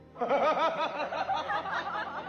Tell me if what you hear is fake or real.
real